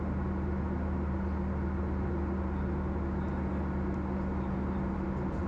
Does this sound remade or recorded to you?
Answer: recorded